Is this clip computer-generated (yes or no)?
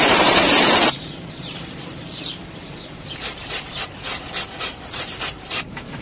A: yes